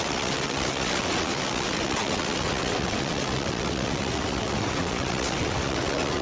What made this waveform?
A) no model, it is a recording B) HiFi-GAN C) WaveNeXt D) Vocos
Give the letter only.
C